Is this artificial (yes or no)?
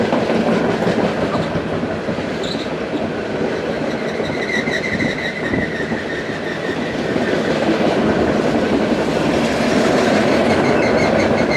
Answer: no